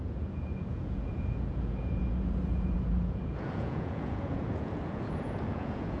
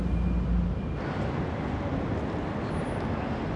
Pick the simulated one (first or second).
first